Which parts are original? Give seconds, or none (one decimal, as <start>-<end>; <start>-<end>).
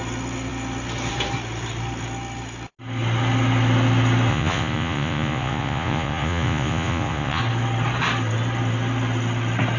0.0-4.3; 7.4-9.8